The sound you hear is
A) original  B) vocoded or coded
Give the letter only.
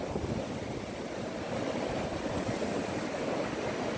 A